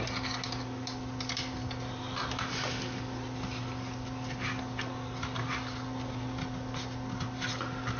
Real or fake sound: real